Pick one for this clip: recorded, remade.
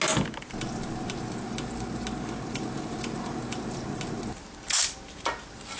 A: recorded